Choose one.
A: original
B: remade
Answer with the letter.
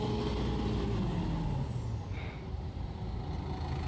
A